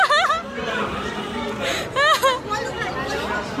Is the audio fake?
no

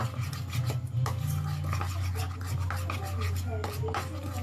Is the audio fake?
no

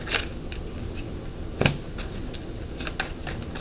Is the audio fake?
no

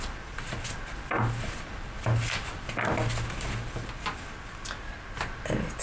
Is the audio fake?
no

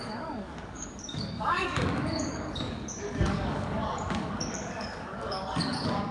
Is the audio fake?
yes